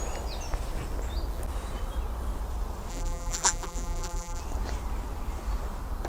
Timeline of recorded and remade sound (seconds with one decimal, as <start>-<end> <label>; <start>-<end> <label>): 0.0-2.9 recorded; 2.9-4.4 remade; 4.4-6.1 recorded